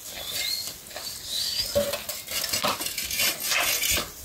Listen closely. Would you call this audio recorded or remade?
recorded